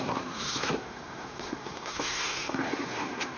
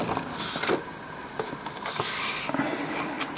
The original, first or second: second